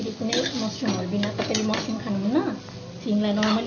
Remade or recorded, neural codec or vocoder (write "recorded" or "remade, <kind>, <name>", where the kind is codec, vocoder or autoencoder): recorded